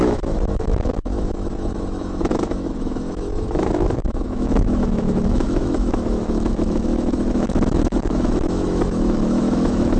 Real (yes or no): no